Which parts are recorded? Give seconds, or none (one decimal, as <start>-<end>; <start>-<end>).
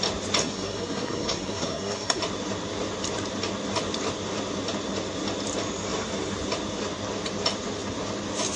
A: 0.0-0.4; 2.2-8.6